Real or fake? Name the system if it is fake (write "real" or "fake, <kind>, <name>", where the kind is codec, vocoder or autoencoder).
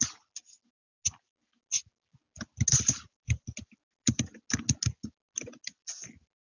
real